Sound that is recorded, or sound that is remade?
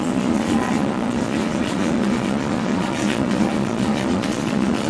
remade